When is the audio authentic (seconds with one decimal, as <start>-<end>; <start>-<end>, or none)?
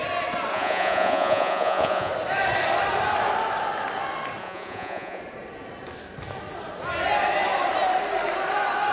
0.0-0.5; 2.1-4.4; 5.2-8.9